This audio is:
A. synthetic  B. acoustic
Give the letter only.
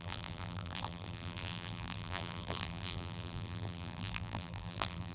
A